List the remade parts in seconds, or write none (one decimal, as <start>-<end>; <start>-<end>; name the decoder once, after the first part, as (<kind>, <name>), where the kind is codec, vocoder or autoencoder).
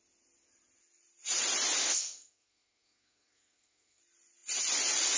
1.8-4.0 (codec, SNAC)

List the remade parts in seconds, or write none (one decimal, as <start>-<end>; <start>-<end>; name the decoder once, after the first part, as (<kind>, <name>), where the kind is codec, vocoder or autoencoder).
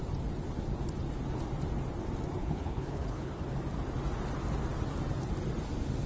2.4-3.3 (codec, HILCodec)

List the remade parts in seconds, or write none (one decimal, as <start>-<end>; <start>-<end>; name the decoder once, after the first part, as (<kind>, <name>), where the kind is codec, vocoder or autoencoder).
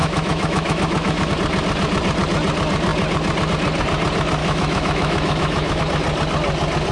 0.0-1.3 (autoencoder, DAC-VAE); 4.4-5.8